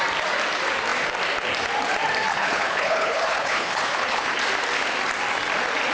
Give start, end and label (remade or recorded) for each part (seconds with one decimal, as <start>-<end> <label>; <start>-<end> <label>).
0.0-2.3 recorded; 2.3-4.3 remade; 4.3-5.9 recorded